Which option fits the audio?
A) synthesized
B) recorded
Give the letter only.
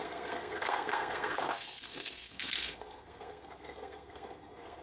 A